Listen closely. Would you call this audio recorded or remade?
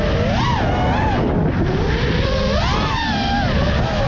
recorded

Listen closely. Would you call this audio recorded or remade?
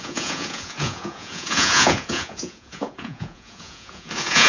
remade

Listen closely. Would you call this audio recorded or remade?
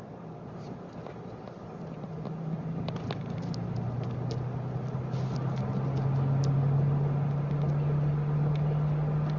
recorded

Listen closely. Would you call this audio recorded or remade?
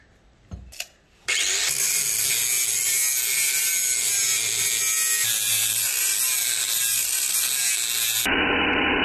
recorded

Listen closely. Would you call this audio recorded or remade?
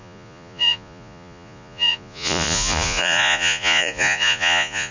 remade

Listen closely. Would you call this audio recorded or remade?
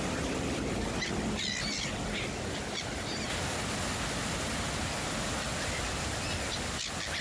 recorded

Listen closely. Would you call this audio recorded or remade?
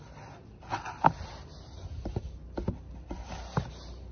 recorded